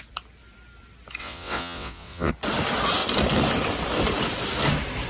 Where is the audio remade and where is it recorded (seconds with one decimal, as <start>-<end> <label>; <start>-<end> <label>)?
0.0-1.2 recorded; 1.2-2.3 remade; 2.3-5.1 recorded